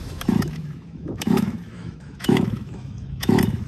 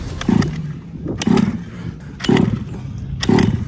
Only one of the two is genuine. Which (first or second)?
second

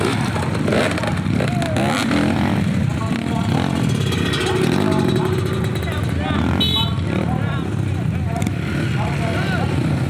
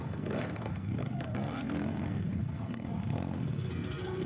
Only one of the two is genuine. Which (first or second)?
first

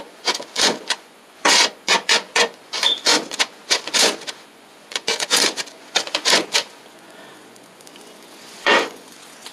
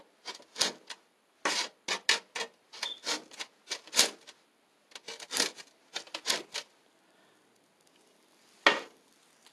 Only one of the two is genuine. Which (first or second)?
second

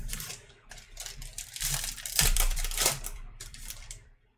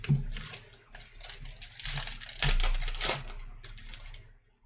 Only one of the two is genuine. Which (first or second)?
second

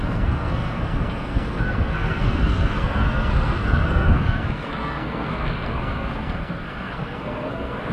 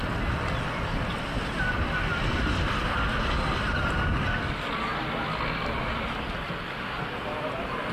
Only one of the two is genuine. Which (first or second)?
second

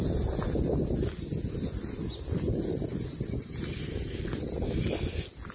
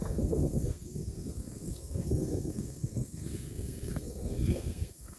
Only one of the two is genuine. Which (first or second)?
first